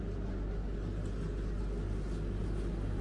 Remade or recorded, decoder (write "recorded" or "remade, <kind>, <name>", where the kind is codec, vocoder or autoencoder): recorded